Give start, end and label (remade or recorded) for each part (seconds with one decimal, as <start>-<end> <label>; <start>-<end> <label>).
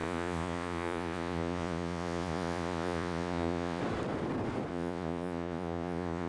0.0-3.8 remade; 3.8-4.7 recorded; 4.7-6.3 remade